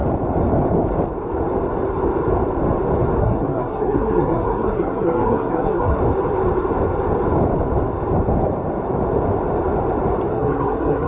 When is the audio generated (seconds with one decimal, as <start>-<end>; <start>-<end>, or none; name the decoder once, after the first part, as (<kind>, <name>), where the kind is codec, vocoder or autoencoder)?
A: 3.2-6.0 (codec, SNAC); 10.3-11.1